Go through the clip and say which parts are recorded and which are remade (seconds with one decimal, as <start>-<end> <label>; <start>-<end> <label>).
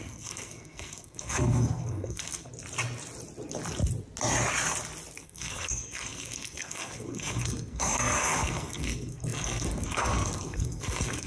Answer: 0.0-2.5 remade; 2.5-5.2 recorded; 5.2-11.3 remade